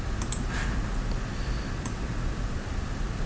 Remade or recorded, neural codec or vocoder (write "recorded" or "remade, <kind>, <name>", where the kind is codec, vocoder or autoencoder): recorded